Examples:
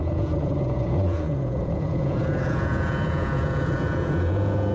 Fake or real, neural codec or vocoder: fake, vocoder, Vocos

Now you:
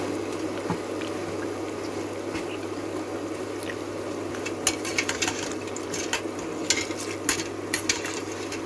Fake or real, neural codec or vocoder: real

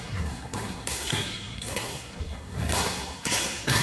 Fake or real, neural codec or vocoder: fake, codec, SNAC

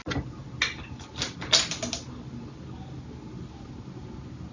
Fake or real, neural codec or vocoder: real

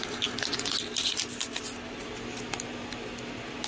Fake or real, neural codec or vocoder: real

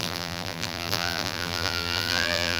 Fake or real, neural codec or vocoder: fake, vocoder, BigVGAN v2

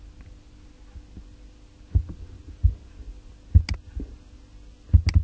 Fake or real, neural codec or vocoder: real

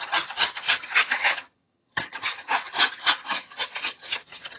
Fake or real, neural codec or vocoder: fake, vocoder, HiFi-GAN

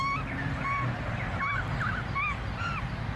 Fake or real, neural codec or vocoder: real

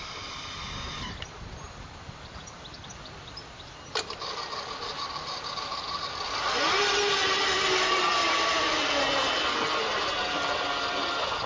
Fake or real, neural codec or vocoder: real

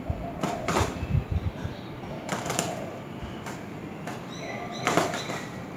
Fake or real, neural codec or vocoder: fake, vocoder, BigVGAN v2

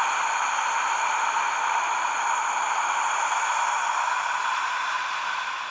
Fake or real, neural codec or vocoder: real